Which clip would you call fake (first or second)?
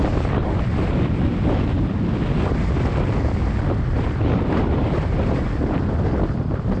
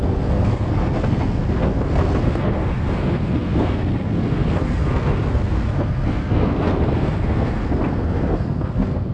second